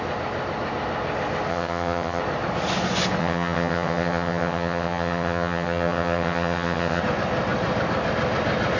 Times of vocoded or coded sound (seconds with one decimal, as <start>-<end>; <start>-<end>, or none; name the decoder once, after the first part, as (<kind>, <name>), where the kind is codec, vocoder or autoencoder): 1.5-2.2 (vocoder, HiFi-GAN); 3.2-7.0